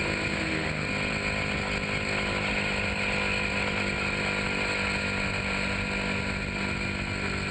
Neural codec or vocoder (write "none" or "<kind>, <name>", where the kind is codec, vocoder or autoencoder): none